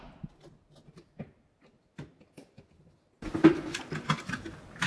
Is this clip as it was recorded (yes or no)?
yes